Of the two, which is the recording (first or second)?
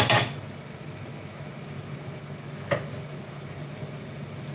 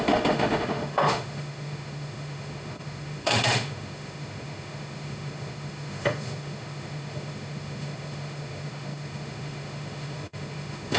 first